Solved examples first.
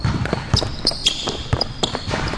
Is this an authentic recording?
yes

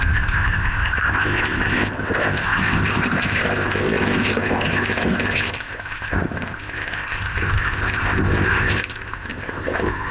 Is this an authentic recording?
no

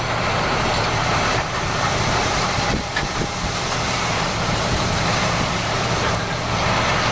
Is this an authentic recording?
no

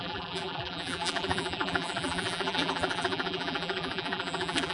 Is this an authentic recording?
no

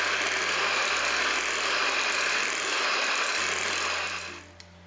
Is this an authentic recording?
yes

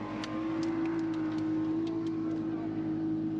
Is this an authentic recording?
yes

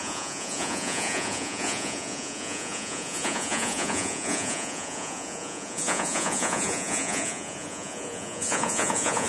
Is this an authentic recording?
no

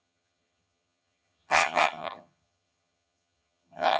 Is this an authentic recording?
no